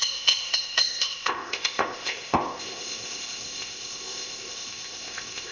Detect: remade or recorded remade